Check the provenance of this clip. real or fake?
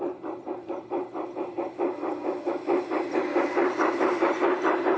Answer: real